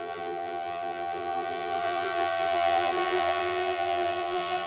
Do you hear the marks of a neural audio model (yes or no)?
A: yes